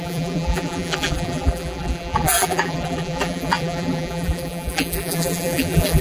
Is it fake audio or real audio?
fake